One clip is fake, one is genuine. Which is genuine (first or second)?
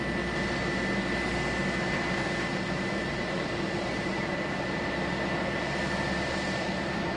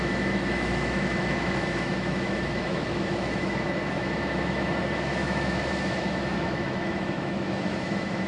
first